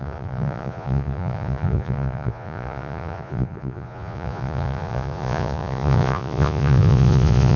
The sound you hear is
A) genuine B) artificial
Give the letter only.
B